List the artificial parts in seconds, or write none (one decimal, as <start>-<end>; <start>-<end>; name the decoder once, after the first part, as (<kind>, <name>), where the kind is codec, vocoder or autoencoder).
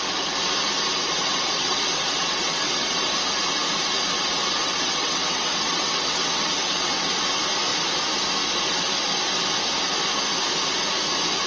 1.0-3.0 (vocoder, WaveNeXt); 4.6-7.3